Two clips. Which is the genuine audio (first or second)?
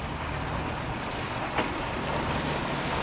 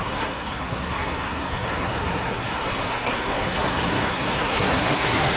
first